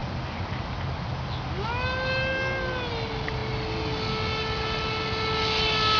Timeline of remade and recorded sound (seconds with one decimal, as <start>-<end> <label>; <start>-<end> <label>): 0.0-6.0 recorded